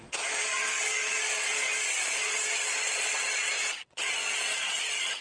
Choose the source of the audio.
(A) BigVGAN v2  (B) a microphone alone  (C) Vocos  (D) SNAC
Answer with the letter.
C